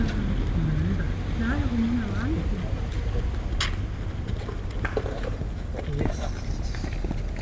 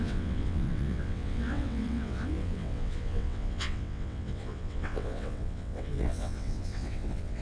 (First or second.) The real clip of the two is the first